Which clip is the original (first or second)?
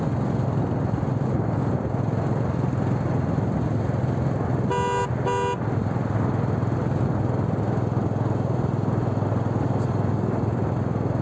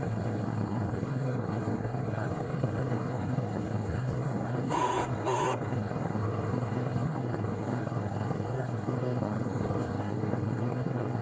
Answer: first